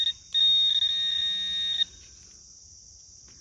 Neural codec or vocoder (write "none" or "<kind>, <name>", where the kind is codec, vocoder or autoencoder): none